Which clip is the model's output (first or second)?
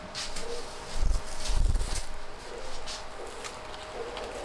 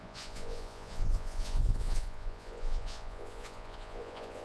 second